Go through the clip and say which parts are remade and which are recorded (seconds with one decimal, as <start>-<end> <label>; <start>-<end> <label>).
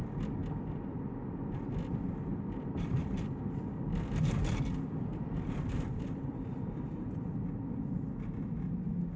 0.0-2.3 recorded; 2.3-3.4 remade; 3.4-5.1 recorded; 5.1-7.2 remade; 7.2-9.2 recorded